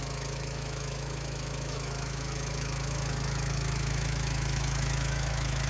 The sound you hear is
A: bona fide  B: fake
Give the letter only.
B